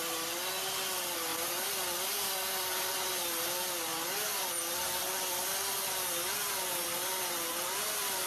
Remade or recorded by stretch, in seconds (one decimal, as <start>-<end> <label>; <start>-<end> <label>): 0.0-8.3 recorded